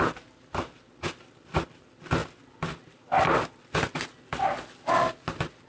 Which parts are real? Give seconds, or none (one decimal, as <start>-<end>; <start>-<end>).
0.0-5.7